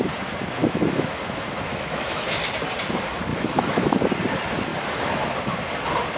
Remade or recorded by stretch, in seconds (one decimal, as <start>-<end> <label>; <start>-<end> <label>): 0.0-0.6 recorded; 0.6-1.2 remade; 1.2-1.7 recorded; 1.7-2.4 remade; 2.4-3.3 recorded; 3.3-4.0 remade; 4.0-4.7 recorded; 4.7-5.3 remade; 5.3-6.2 recorded